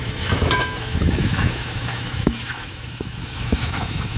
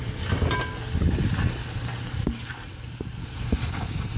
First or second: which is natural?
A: second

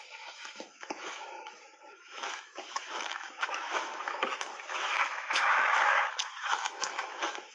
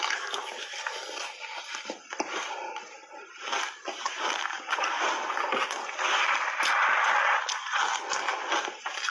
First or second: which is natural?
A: second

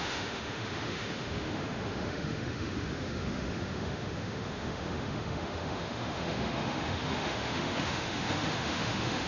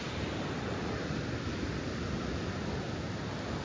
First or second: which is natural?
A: second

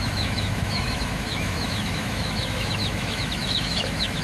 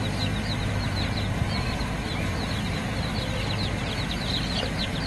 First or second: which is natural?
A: second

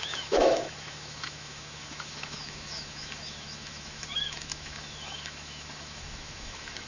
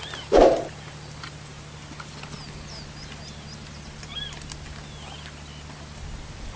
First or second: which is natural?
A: second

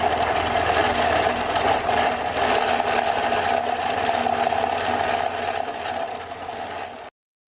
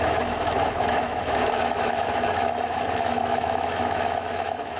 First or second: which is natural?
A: first